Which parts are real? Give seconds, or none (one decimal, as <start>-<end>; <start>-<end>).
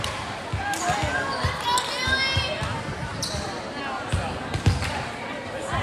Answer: 0.0-5.8